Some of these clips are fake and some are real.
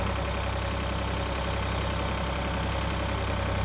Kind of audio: real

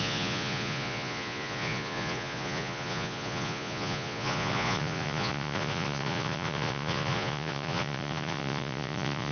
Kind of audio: fake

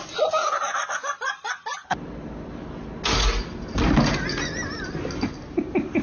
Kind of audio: real